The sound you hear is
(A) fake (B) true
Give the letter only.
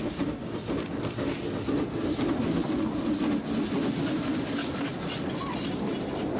B